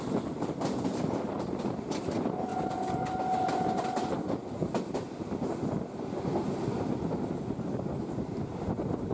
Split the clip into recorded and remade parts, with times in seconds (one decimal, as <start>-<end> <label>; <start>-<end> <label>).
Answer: 0.0-2.5 remade; 2.5-7.6 recorded; 7.6-9.1 remade